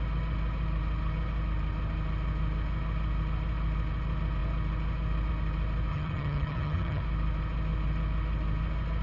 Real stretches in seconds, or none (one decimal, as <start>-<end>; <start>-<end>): 0.0-5.9; 7.0-9.0